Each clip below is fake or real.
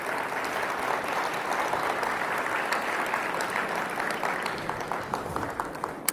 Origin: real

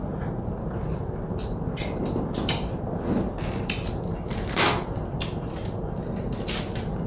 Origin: real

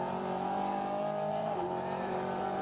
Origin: fake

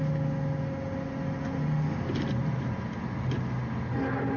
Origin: real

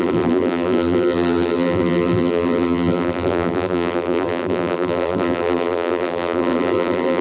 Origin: fake